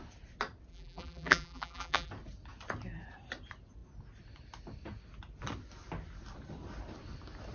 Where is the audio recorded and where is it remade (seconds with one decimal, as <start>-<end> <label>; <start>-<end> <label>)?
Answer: 0.0-0.7 recorded; 0.7-2.1 remade; 2.1-7.5 recorded